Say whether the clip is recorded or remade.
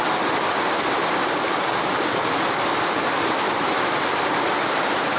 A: recorded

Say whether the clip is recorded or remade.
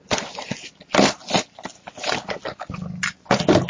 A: recorded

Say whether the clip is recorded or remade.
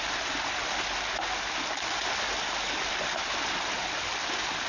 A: recorded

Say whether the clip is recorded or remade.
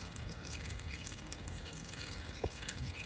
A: remade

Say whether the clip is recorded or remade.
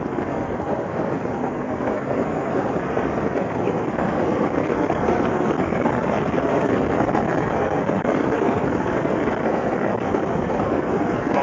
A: remade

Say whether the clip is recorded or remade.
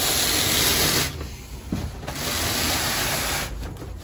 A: recorded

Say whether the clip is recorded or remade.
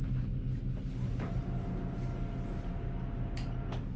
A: recorded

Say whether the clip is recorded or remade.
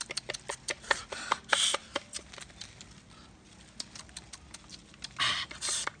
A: recorded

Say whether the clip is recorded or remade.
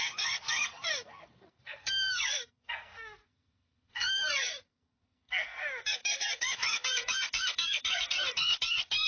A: remade